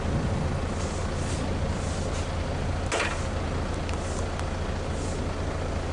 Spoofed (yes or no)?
no